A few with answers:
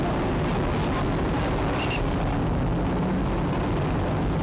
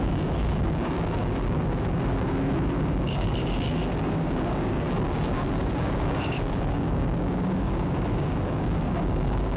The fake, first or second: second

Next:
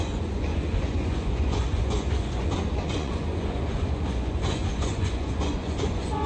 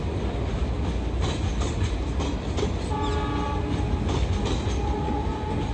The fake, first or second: first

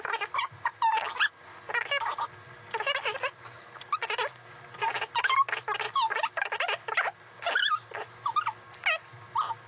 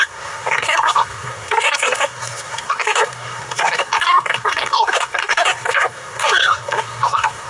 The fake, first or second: second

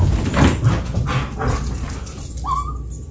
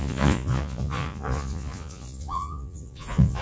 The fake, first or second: second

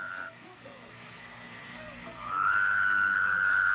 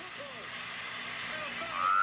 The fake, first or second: first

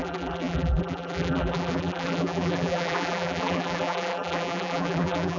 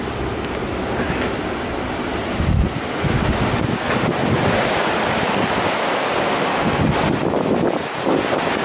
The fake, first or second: first